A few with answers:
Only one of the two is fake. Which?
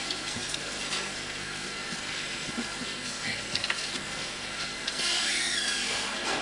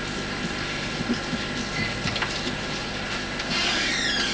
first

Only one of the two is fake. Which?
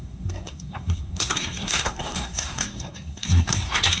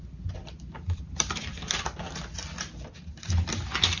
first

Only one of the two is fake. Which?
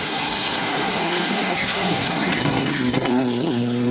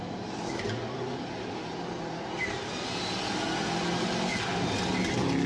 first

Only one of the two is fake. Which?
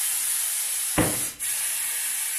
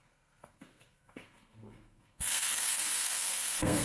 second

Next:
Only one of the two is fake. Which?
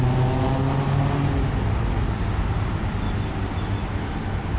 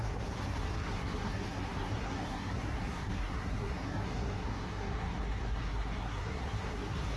second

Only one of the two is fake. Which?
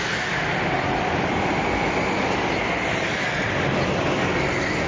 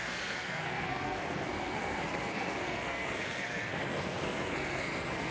second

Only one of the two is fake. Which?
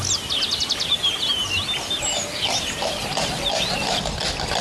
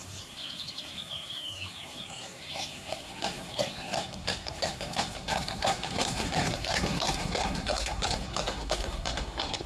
second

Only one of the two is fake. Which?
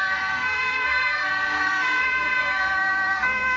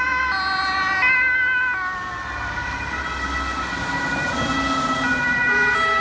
first